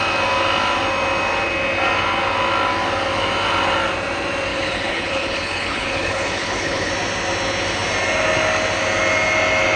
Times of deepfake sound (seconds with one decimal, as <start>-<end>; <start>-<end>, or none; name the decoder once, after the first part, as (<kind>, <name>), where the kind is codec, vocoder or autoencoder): 4.5-6.9 (codec, HILCodec)

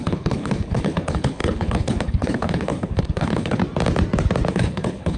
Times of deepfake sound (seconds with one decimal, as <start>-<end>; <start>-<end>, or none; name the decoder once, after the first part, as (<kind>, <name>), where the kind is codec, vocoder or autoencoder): 0.0-3.6 (codec, HILCodec); 4.5-5.2

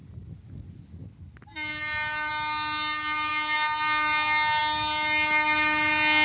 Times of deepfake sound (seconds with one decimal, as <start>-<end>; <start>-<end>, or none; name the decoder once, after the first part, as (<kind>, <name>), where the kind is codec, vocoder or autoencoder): none

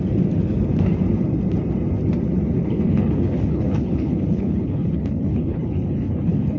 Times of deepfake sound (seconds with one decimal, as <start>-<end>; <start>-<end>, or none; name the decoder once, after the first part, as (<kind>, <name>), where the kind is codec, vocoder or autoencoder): 2.6-6.6 (codec, HILCodec)